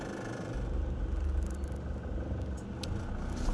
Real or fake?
real